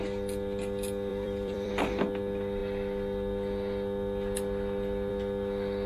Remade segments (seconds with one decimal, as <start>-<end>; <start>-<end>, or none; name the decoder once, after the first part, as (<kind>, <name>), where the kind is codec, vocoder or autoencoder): 1.1-1.7 (vocoder, BigVGAN v2)